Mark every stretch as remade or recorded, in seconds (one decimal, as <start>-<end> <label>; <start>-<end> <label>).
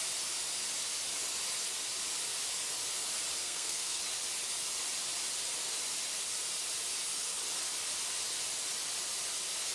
0.0-3.4 recorded; 3.4-4.0 remade; 4.0-9.7 recorded